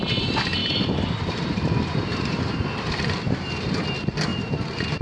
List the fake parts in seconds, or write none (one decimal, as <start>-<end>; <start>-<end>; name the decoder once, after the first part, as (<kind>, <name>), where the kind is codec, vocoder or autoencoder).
0.6-3.6 (vocoder, BigVGAN v2); 4.3-5.0